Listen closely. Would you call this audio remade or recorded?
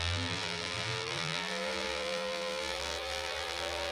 remade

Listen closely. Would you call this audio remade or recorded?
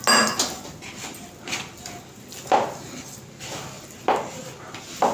recorded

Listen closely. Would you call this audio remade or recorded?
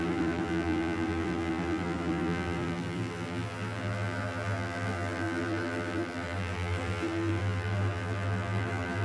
remade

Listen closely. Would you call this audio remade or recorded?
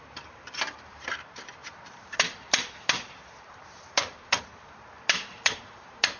remade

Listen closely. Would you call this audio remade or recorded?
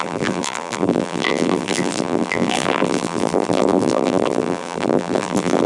remade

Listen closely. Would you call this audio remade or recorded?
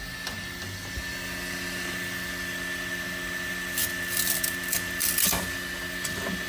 recorded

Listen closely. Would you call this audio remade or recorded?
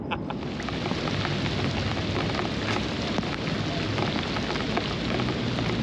recorded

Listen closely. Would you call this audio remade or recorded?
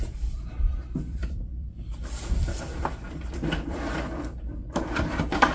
remade